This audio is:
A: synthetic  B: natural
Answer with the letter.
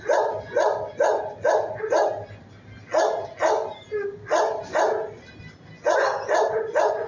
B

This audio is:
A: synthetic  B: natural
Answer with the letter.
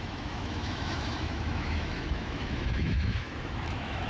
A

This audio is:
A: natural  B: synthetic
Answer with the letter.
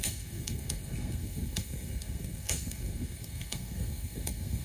B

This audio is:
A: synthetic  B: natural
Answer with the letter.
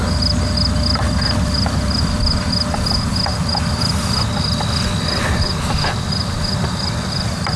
B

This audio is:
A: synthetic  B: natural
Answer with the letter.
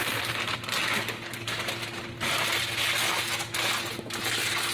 B